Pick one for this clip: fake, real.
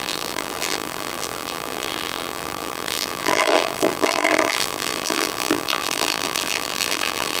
fake